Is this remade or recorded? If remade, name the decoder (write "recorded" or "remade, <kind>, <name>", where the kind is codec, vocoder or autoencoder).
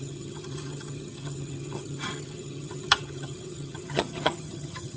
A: remade, vocoder, HiFi-GAN